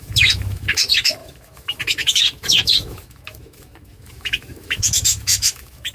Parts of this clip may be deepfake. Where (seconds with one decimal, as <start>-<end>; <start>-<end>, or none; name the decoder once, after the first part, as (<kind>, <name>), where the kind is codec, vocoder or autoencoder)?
0.0-5.9 (autoencoder, DAC-VAE)

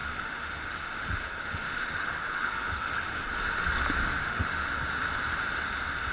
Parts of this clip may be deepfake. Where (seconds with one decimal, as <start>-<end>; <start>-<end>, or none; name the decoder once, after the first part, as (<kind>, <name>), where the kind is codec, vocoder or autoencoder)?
0.0-1.0 (autoencoder, DAC-VAE); 1.4-2.8; 4.0-4.7

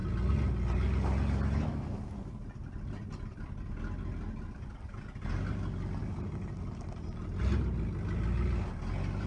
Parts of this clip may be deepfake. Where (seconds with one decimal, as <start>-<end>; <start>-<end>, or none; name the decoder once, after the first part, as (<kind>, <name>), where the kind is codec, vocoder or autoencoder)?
none

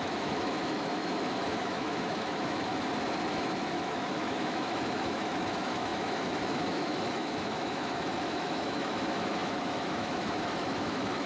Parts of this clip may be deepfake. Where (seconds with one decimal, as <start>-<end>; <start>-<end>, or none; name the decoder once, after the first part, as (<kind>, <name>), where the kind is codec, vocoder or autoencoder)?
0.0-2.7 (autoencoder, DAC-VAE); 3.3-11.3